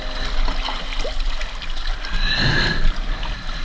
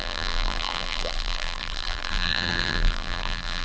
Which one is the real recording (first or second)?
first